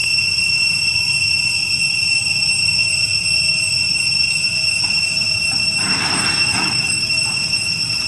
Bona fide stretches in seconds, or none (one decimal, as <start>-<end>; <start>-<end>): 0.0-6.5; 7.1-8.1